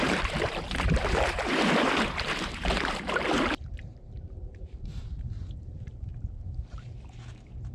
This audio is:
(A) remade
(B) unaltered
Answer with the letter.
A